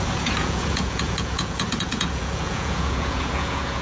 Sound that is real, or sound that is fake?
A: fake